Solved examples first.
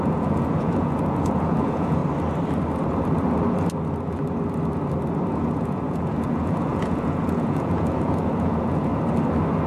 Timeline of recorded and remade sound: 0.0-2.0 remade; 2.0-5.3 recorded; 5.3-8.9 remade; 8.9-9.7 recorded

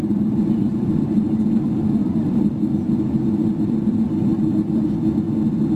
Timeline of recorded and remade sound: 0.0-1.4 remade; 1.4-2.0 recorded; 2.0-4.9 remade; 4.9-5.8 recorded